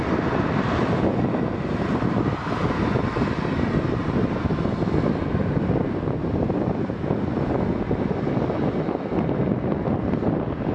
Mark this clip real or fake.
real